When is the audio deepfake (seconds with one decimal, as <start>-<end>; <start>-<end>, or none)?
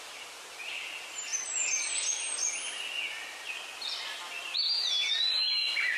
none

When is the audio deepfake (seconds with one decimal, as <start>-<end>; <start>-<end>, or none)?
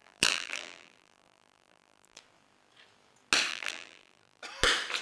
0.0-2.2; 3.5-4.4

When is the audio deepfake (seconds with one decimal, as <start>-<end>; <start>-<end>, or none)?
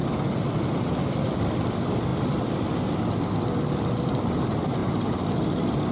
none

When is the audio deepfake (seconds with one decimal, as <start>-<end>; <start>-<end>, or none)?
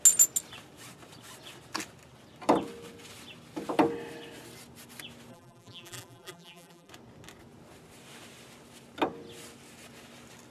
5.3-6.9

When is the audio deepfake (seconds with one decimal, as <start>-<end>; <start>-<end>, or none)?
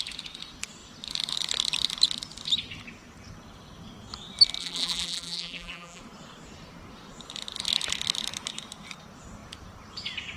4.6-6.0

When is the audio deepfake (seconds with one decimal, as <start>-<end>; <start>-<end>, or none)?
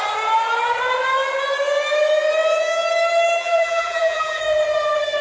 3.4-4.4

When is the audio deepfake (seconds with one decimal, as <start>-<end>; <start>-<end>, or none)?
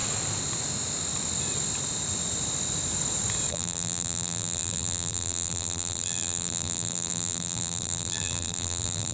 3.5-9.1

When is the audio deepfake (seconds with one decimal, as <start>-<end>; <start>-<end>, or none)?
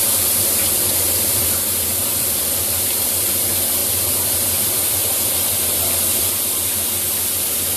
0.0-7.8